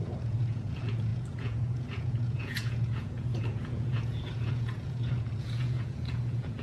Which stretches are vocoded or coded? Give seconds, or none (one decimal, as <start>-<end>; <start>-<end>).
0.0-6.6